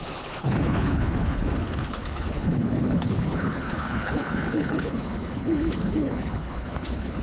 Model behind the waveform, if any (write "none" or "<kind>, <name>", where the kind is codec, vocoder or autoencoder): codec, HILCodec